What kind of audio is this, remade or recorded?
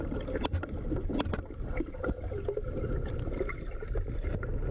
recorded